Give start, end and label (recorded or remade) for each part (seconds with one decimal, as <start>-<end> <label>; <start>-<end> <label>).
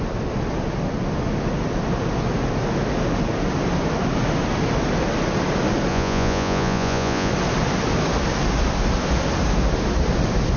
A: 0.0-5.9 recorded; 5.9-7.3 remade; 7.3-10.6 recorded